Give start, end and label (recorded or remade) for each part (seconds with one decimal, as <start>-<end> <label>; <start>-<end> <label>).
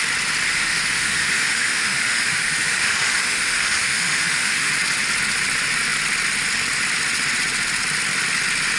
0.0-0.5 recorded; 0.5-4.7 remade; 4.7-8.8 recorded